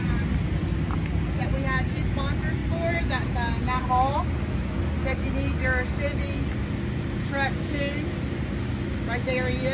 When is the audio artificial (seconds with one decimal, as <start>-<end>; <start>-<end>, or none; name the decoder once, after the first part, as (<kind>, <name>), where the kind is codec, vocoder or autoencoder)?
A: none